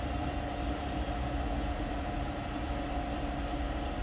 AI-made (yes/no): no